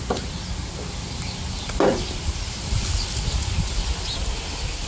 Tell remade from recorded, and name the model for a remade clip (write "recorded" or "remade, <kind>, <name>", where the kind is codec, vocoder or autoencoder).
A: recorded